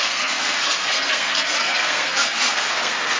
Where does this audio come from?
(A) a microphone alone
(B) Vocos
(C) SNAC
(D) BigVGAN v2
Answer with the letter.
C